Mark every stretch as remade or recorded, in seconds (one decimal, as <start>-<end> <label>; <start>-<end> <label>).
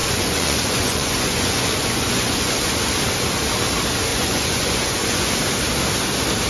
0.0-2.9 remade; 2.9-4.1 recorded; 4.1-5.3 remade; 5.3-6.5 recorded